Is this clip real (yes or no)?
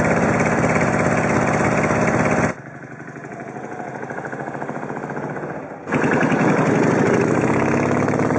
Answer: yes